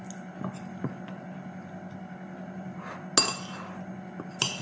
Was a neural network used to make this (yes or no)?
no